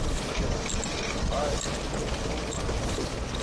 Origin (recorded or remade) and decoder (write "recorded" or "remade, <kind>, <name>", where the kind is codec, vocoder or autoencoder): recorded